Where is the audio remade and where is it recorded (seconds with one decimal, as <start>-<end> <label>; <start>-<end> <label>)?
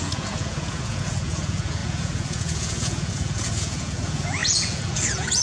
0.0-5.4 remade